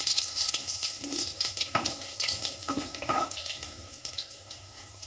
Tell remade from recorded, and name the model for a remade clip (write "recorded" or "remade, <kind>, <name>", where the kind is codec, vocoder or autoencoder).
remade, codec, SNAC